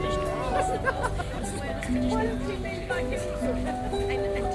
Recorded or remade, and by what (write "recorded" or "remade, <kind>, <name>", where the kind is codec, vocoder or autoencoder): recorded